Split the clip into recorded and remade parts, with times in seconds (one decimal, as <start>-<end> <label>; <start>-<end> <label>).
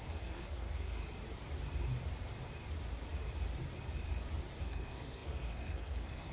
0.0-1.0 remade; 1.0-4.6 recorded; 4.6-6.3 remade